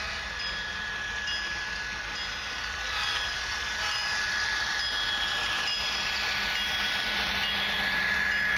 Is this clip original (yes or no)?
yes